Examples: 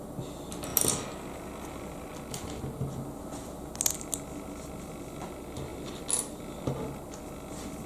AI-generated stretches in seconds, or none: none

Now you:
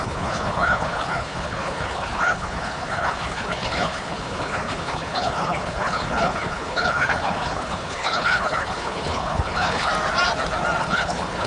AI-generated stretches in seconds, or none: 0.0-9.9 (codec, HILCodec); 10.8-11.5

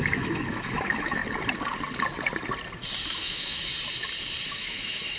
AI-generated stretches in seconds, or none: 0.0-1.2 (autoencoder, DAC-VAE); 3.1-3.7; 4.5-5.2